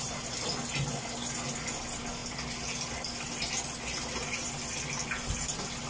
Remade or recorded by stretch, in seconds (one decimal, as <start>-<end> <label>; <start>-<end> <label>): 0.0-5.9 recorded